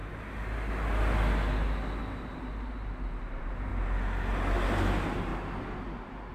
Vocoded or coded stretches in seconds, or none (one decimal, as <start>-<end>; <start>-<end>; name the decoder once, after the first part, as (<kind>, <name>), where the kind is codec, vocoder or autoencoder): 3.3-3.7 (vocoder, BigVGAN v2); 4.7-5.3